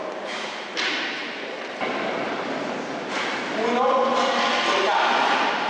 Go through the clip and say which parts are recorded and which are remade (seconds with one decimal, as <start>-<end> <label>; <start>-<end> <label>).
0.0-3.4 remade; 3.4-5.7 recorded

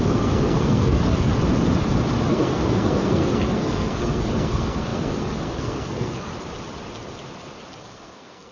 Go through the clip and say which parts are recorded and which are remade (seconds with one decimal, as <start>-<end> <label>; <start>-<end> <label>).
0.0-1.3 remade; 1.3-2.3 recorded; 2.3-6.3 remade; 6.3-7.8 recorded; 7.8-8.5 remade

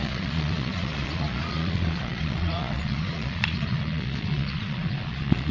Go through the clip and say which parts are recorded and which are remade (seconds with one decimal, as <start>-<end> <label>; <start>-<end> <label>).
0.0-5.5 remade

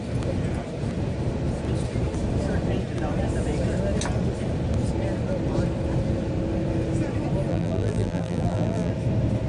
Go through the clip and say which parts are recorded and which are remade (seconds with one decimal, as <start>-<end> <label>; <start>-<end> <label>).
0.0-7.5 recorded; 7.5-8.9 remade; 8.9-9.5 recorded

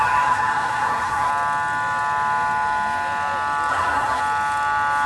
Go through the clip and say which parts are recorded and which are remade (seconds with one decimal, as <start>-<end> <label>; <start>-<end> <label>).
0.0-1.3 remade; 1.3-3.7 recorded; 3.7-4.2 remade; 4.2-5.1 recorded

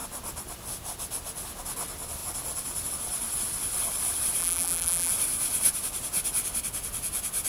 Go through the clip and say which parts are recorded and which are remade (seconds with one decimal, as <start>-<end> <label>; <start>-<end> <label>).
0.0-4.4 recorded; 4.4-5.1 remade; 5.1-7.5 recorded

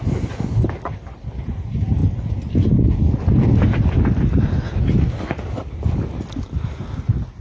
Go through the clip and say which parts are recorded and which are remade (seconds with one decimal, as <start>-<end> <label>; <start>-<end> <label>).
0.0-7.4 recorded